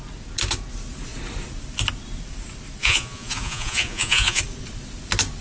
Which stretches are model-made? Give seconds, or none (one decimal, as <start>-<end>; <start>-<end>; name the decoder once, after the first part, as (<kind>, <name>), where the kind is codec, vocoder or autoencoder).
2.8-4.4 (vocoder, Vocos)